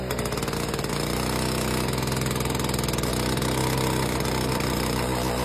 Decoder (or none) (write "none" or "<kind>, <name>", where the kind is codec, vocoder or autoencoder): none